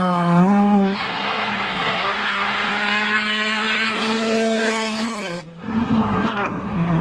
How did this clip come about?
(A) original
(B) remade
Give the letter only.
B